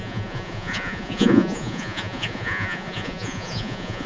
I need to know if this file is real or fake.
fake